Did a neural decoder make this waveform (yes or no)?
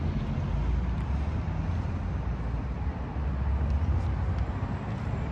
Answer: no